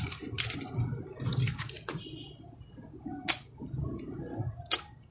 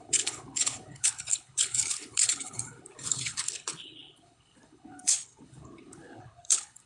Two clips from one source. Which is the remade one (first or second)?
second